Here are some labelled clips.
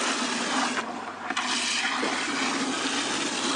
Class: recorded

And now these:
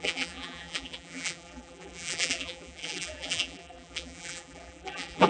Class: remade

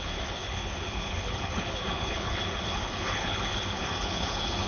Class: remade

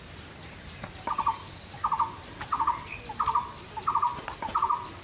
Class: recorded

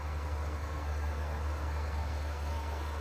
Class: remade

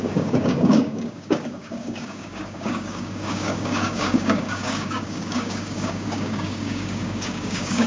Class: remade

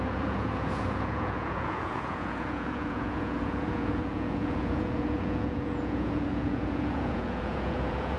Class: remade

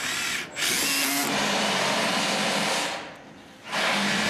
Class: recorded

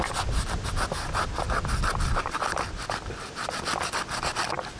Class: recorded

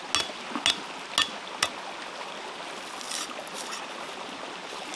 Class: recorded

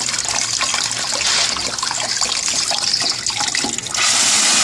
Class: recorded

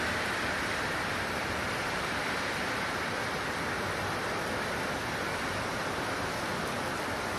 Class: remade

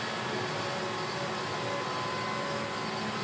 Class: recorded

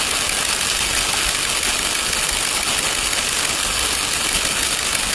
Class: recorded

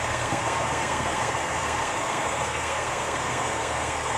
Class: remade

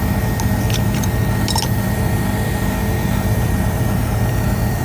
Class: remade